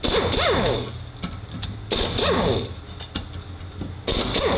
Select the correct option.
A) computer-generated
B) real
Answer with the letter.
B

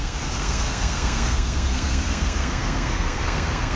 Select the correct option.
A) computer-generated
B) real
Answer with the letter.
A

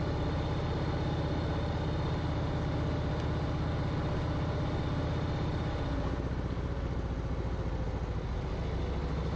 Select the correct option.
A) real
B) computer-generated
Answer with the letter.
A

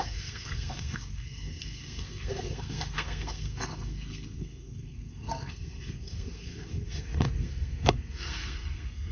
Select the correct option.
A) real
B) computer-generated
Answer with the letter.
B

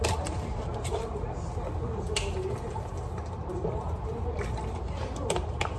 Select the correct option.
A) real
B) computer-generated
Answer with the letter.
A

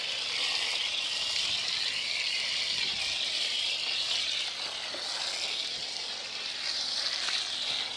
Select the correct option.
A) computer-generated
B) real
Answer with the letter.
B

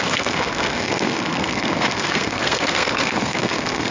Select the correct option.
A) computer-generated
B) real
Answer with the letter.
A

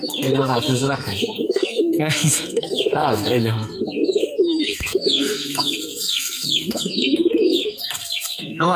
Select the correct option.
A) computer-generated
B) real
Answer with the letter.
A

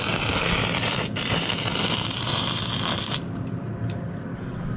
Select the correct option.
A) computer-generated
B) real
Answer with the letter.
B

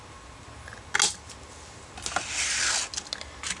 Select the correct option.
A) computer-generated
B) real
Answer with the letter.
B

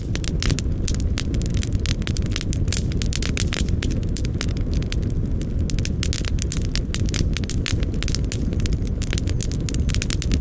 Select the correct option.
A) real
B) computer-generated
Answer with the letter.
A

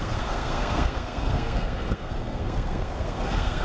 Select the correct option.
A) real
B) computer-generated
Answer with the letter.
B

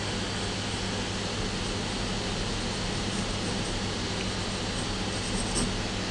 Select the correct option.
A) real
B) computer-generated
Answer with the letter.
A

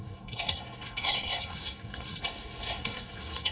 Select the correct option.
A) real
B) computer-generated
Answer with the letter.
B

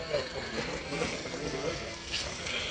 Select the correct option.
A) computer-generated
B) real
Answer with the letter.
A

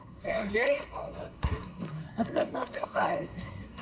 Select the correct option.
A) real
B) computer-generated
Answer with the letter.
B